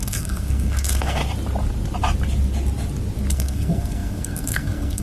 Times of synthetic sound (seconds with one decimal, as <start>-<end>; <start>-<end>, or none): 0.0-1.2; 3.3-5.0